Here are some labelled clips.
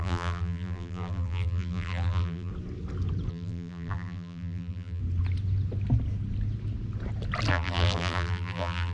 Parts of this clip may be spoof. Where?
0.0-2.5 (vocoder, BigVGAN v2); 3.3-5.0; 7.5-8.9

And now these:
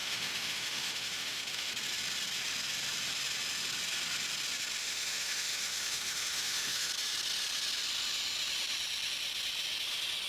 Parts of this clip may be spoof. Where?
0.0-1.7 (autoencoder, DAC-VAE); 4.8-6.9

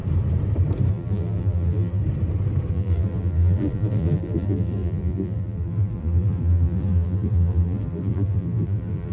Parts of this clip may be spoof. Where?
0.9-2.0 (vocoder, BigVGAN v2); 2.7-9.1

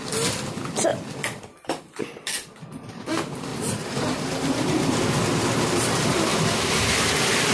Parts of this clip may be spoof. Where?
0.0-3.5 (vocoder, BigVGAN v2); 5.4-6.3; 7.1-7.5

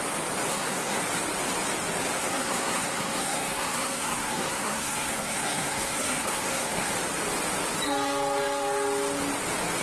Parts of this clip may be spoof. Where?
0.5-1.0 (codec, SNAC); 2.2-6.9

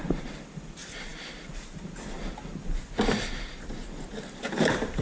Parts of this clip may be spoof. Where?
0.0-5.0 (vocoder, BigVGAN v2)

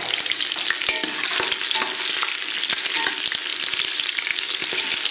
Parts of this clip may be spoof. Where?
3.5-4.6 (vocoder, BigVGAN v2)

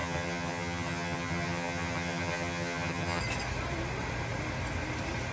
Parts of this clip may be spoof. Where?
0.0-3.2 (vocoder, HiFi-GAN)